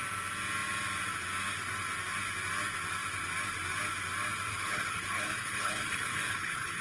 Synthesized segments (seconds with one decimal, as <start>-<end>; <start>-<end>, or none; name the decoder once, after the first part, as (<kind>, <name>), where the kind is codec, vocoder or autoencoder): 4.5-6.8 (codec, HILCodec)